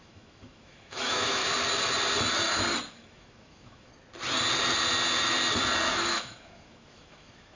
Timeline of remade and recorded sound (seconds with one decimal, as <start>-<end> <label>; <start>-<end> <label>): 0.0-1.4 remade; 1.4-2.9 recorded; 2.9-3.9 remade; 3.9-5.9 recorded; 5.9-7.6 remade